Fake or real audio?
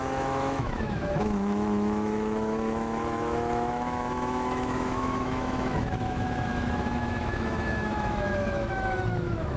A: fake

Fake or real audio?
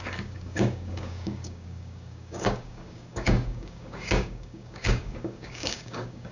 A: fake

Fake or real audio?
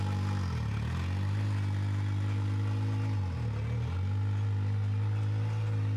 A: real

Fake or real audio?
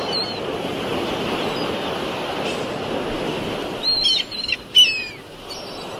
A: real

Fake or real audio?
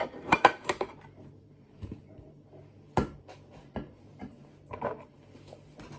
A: fake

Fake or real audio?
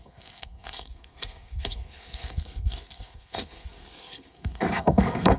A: fake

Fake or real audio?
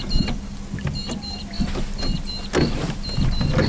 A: real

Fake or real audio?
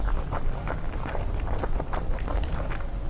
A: real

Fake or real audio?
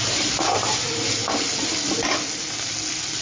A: real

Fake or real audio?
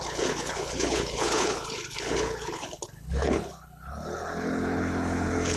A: fake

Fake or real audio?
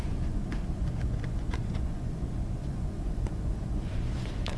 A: fake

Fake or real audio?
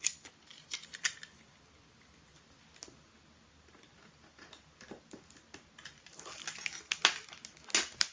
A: real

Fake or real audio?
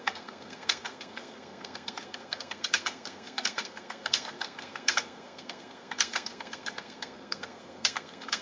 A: fake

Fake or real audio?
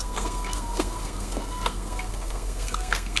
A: fake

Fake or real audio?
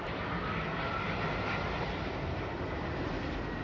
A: real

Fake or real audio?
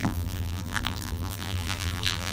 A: fake